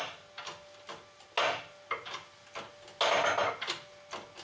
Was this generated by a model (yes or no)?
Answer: no